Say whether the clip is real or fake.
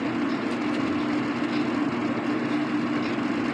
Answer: real